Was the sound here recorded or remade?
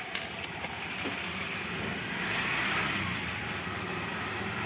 recorded